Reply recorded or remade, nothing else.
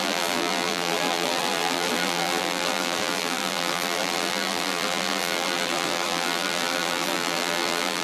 remade